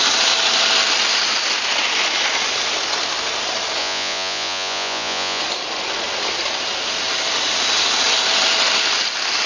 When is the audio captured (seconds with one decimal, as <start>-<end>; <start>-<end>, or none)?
0.0-3.8; 5.4-9.5